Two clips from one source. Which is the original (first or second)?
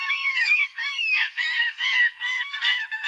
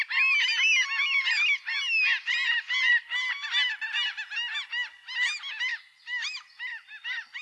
second